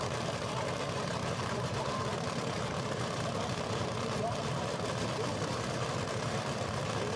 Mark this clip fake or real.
fake